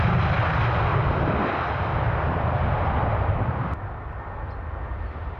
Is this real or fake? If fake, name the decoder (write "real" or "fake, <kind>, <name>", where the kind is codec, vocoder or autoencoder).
real